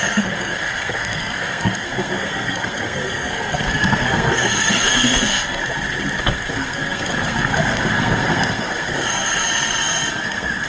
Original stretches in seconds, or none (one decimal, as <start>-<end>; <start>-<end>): 5.6-6.2